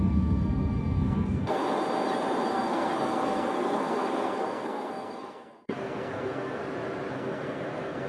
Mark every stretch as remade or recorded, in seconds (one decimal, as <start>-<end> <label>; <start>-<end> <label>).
0.0-1.6 remade; 1.6-2.5 recorded; 2.5-6.6 remade; 6.6-7.1 recorded; 7.1-8.1 remade